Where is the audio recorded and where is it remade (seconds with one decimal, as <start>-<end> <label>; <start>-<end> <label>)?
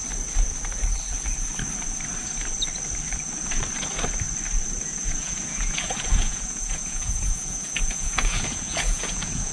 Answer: 0.0-4.8 recorded; 4.8-9.5 remade